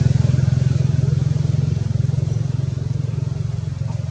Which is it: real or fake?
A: real